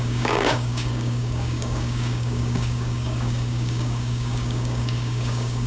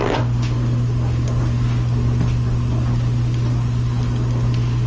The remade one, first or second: first